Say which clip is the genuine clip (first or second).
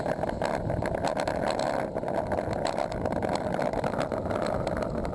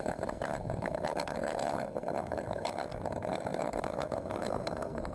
first